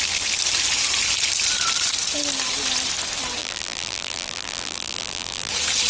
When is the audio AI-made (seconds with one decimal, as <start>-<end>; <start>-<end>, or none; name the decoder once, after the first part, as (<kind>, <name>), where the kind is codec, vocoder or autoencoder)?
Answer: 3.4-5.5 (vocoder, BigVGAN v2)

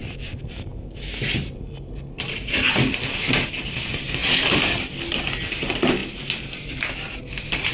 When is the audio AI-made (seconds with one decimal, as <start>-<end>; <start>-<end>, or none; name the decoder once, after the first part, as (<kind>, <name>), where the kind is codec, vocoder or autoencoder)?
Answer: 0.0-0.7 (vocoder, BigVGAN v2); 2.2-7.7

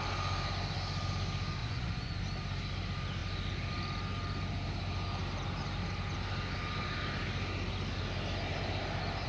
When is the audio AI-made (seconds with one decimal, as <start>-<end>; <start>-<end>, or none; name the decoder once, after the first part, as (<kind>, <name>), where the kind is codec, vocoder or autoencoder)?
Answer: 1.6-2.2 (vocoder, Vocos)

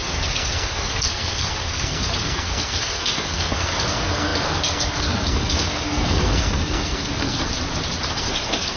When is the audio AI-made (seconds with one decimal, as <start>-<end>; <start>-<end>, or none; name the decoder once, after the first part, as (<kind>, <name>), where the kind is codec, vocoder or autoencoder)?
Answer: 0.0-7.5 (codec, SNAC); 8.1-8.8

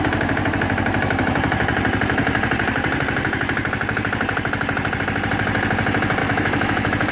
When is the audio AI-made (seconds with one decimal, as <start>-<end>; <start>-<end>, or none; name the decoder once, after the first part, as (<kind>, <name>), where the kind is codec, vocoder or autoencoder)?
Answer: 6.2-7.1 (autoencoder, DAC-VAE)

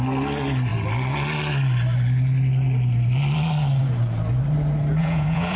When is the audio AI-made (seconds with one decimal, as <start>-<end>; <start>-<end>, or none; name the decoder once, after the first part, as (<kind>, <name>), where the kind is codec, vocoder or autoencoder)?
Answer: 5.0-5.6 (vocoder, Vocos)